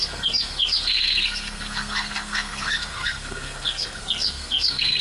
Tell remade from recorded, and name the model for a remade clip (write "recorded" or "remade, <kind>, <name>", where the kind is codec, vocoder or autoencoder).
remade, codec, SNAC